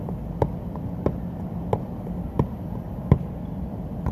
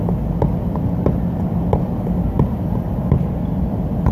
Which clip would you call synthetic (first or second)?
first